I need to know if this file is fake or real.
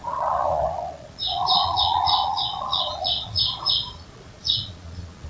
fake